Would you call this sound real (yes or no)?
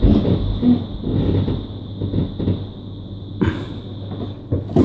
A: yes